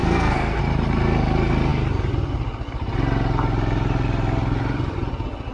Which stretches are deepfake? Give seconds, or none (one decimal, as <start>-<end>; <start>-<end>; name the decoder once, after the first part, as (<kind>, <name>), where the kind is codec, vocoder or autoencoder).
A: 0.0-0.6 (codec, SNAC)